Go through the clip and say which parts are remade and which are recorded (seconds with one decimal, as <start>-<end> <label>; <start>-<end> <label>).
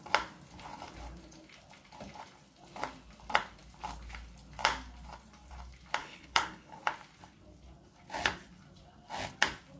0.0-6.0 recorded; 6.0-6.8 remade; 6.8-9.8 recorded